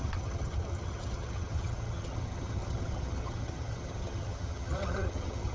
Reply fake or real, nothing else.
fake